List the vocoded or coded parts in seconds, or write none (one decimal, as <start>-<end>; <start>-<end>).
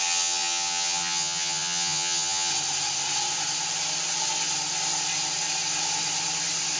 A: 0.0-2.5